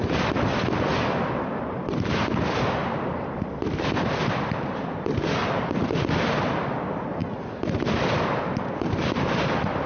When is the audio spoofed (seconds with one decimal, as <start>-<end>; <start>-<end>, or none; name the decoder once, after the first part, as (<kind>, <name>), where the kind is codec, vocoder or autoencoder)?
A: 1.7-2.3 (vocoder, BigVGAN v2); 2.8-5.0